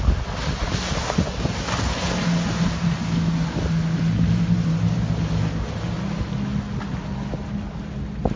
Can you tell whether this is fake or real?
real